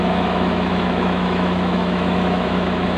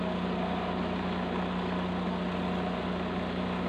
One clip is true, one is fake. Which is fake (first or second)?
first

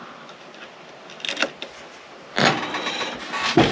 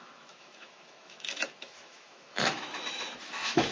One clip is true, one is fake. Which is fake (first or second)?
second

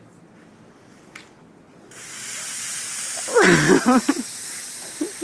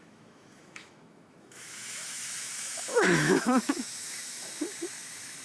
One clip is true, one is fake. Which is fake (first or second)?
second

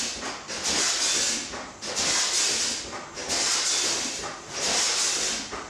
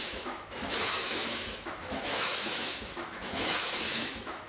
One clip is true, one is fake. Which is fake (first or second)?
second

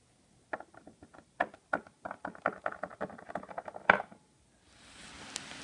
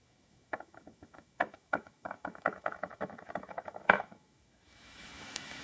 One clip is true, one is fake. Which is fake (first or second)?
second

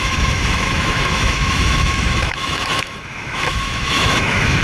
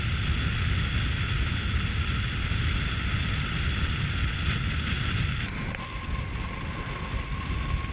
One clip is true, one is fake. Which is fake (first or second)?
first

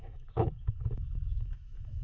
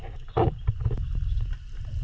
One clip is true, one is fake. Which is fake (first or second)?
first